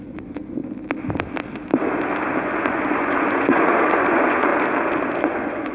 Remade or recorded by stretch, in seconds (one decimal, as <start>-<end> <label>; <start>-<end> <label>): 0.0-0.6 remade; 0.6-2.4 recorded; 2.4-4.5 remade; 4.5-5.2 recorded; 5.2-5.7 remade